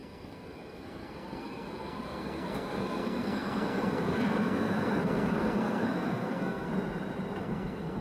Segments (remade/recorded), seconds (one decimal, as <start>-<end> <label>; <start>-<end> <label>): 0.0-6.7 remade; 6.7-7.4 recorded; 7.4-8.0 remade